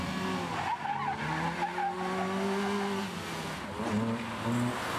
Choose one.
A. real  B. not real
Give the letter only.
A